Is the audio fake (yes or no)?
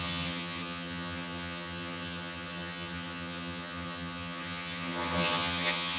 yes